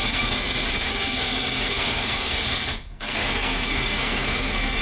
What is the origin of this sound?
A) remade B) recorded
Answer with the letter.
A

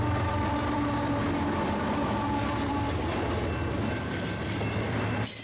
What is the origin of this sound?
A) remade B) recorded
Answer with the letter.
A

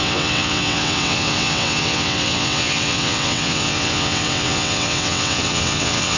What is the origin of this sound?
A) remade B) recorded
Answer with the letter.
A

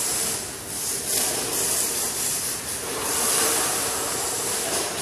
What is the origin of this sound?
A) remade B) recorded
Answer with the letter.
B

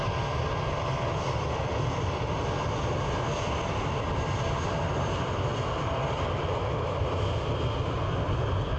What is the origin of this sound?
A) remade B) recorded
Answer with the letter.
B